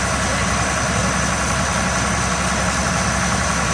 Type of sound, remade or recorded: recorded